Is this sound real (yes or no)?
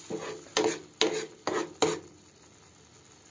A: yes